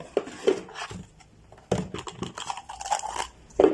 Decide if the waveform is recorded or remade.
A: recorded